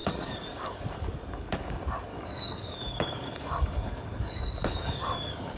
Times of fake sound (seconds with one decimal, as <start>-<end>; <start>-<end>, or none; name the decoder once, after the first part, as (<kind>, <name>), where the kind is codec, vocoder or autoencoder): 0.0-1.7 (codec, DAC); 2.1-5.6